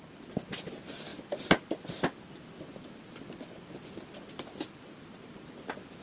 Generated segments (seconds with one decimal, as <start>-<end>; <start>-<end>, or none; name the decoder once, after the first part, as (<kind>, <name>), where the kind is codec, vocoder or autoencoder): none

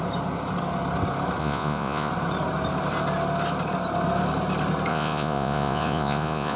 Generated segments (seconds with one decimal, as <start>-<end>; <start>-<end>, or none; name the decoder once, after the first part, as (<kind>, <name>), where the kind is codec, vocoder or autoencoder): 1.4-2.1 (vocoder, Vocos); 4.9-6.6

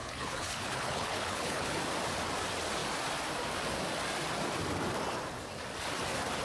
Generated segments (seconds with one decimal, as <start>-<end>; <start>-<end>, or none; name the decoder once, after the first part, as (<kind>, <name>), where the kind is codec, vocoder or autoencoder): 0.0-1.8 (codec, HILCodec)

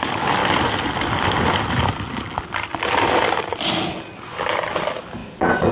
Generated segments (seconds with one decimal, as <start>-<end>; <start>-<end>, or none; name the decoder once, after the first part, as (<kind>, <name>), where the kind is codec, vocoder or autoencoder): 5.2-5.7 (vocoder, Vocos)